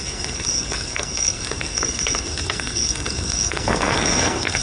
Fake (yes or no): yes